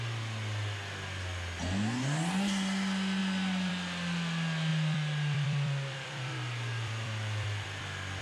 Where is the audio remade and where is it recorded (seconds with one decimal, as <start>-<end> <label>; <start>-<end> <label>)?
0.0-4.7 recorded; 4.7-8.2 remade